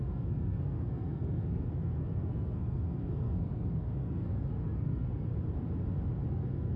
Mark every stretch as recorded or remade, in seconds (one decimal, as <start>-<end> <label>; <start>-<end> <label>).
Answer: 0.0-5.3 remade; 5.3-6.3 recorded; 6.3-6.8 remade